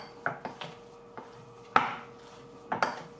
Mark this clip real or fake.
real